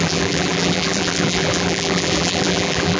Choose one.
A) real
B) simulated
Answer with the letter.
B